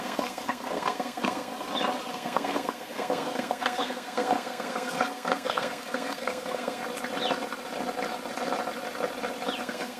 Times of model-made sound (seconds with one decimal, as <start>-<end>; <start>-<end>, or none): 0.0-1.5; 2.1-6.8; 9.6-10.0